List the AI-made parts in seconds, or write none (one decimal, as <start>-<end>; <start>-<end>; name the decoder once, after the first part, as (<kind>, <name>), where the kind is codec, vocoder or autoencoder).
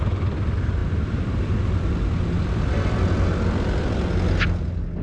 none